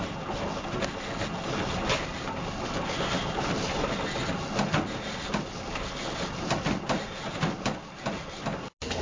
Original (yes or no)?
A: yes